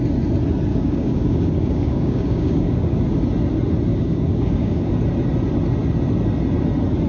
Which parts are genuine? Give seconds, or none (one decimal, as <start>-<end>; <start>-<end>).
0.0-0.7; 3.0-3.9; 4.9-7.1